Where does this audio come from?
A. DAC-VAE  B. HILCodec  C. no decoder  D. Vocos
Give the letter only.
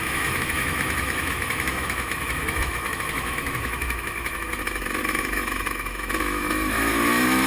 A